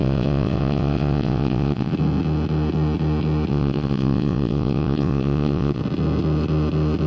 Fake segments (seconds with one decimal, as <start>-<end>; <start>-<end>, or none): 0.0-1.9; 3.5-5.8